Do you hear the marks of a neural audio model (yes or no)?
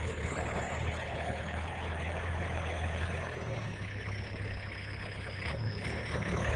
yes